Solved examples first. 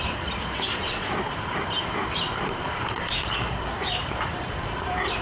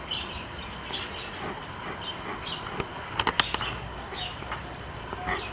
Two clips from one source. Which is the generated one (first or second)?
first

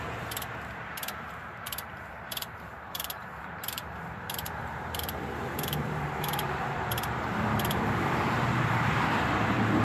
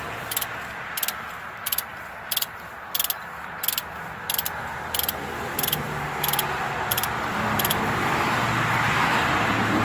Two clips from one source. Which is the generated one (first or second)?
first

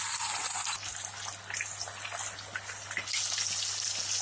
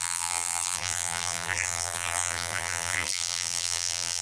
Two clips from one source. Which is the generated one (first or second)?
second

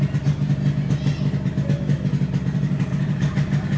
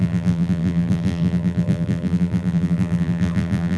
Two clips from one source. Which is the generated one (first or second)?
second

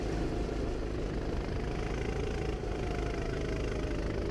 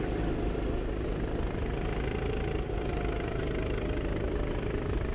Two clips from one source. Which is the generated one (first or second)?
second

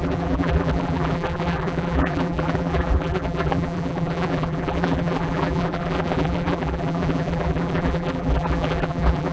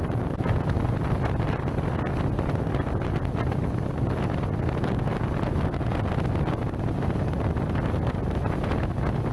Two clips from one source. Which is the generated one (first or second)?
first